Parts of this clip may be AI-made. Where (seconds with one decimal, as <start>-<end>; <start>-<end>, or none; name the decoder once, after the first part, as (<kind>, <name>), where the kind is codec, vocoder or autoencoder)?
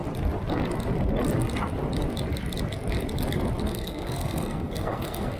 3.7-5.4 (codec, SNAC)